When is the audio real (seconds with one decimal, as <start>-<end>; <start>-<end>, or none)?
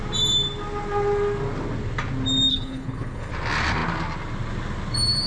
0.0-2.5; 3.3-5.3